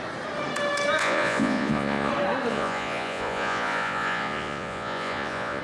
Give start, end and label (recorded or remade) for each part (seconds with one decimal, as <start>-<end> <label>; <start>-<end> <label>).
0.0-1.0 recorded; 1.0-2.1 remade; 2.1-2.5 recorded; 2.5-5.6 remade